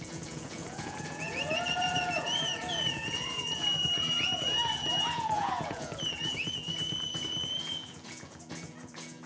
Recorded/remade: remade